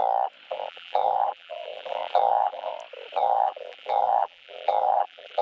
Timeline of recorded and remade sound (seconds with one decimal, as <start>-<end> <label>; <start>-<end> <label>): 0.0-0.5 recorded; 0.5-2.7 remade; 2.7-3.2 recorded; 3.2-5.4 remade